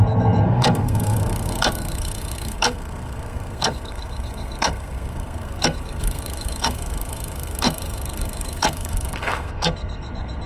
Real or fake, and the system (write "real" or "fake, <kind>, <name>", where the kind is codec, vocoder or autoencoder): fake, codec, SNAC